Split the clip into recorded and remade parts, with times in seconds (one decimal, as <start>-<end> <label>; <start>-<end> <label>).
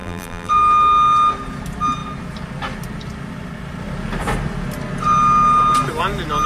0.0-0.5 remade; 0.5-6.5 recorded